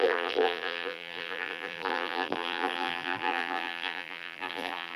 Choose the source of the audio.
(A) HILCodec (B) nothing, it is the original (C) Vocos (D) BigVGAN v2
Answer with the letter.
D